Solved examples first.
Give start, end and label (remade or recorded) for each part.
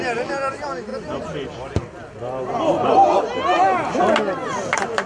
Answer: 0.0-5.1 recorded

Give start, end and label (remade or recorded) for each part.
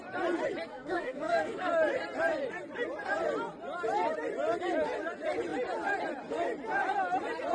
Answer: 0.0-0.7 recorded; 0.7-1.7 remade; 1.7-7.5 recorded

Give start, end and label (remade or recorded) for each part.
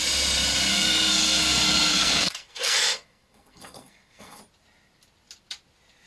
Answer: 0.0-0.7 recorded; 0.7-4.4 remade; 4.4-6.1 recorded